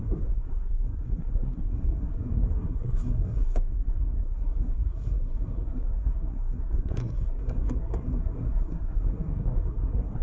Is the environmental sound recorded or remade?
remade